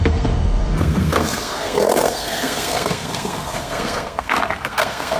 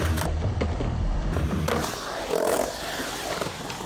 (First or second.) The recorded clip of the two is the second